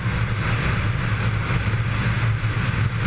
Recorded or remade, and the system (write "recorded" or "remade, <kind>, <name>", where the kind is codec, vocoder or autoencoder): recorded